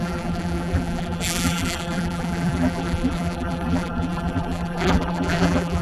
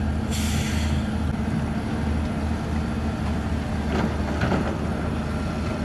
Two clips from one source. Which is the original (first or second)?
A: second